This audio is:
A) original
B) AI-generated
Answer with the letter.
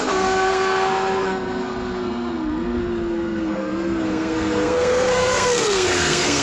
B